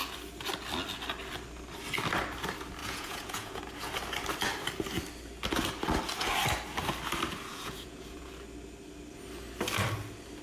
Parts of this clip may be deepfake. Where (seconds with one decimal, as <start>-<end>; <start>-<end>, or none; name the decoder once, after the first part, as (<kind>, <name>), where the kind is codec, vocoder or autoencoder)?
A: 2.8-3.6 (vocoder, Vocos); 7.5-8.3